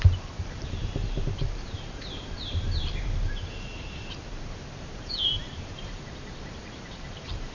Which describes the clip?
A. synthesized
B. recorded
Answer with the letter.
A